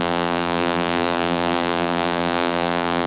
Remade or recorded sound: remade